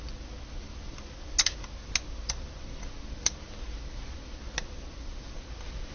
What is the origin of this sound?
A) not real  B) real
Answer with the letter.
B